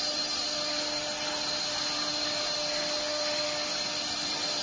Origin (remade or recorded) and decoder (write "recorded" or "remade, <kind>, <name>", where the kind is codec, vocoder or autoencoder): recorded